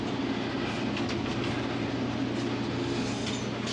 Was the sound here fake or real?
real